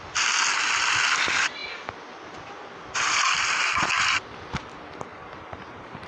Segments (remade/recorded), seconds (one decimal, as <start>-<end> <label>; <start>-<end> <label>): 0.0-5.1 recorded; 5.1-6.1 remade